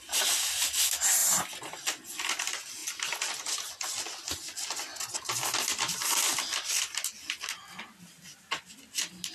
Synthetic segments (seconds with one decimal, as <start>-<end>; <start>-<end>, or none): none